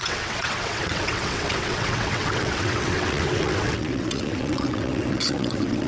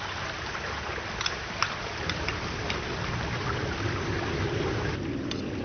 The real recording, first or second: second